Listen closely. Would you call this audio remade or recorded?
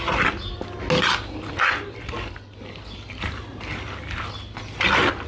recorded